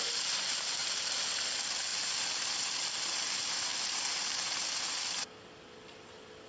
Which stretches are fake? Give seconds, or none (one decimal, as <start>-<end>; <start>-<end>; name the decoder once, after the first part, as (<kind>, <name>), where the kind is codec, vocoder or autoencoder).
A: 0.8-1.4 (vocoder, BigVGAN v2); 3.7-4.6